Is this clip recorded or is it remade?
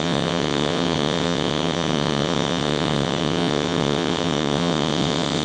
remade